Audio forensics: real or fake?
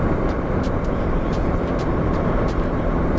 fake